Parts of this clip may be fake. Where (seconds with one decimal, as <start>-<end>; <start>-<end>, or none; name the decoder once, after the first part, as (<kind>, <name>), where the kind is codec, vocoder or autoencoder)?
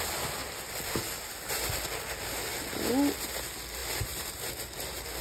3.8-4.5 (vocoder, BigVGAN v2)